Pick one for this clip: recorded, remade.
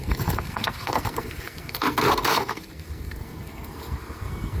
remade